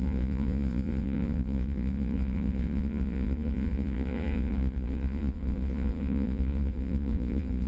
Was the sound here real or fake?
fake